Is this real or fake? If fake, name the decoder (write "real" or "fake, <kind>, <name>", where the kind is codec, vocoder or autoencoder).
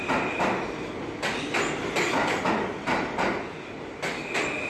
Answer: real